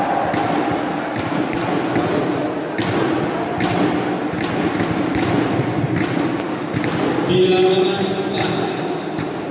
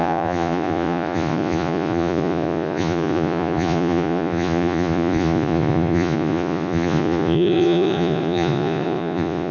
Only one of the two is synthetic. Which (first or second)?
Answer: second